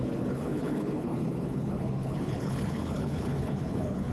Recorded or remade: remade